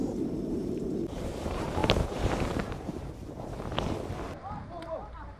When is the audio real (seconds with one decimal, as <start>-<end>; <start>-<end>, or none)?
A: 3.7-4.6